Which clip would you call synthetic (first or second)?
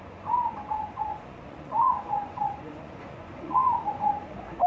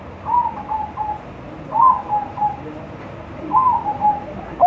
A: first